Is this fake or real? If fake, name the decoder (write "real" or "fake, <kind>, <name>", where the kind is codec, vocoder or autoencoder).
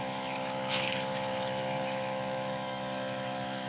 fake, autoencoder, DAC-VAE